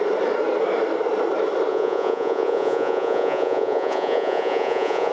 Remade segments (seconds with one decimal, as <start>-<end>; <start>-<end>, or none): 1.7-5.1